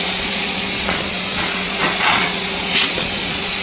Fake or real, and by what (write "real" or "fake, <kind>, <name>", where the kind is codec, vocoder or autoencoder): fake, vocoder, Vocos